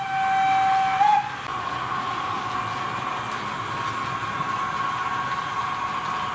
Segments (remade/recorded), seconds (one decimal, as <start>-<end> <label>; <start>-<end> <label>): 0.0-1.5 recorded; 1.5-2.4 remade; 2.4-6.3 recorded